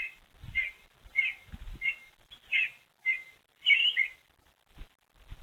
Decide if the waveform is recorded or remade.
recorded